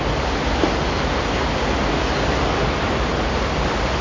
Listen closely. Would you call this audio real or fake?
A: real